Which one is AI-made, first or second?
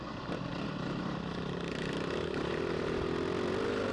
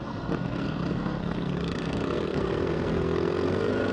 second